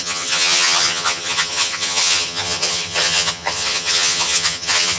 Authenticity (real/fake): fake